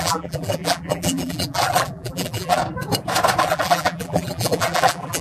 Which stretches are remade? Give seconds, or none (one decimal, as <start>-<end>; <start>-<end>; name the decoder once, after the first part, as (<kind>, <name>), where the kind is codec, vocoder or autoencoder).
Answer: 0.0-2.6 (vocoder, BigVGAN v2); 3.4-5.2